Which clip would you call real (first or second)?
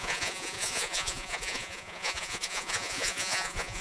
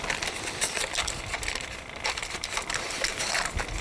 second